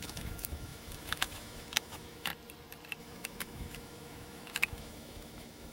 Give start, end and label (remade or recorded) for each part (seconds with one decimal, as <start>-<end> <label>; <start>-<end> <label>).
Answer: 0.0-2.3 remade; 2.3-3.0 recorded; 3.0-5.7 remade